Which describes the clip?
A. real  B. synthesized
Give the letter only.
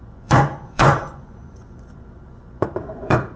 B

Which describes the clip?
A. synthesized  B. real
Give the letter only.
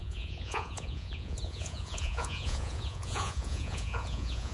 A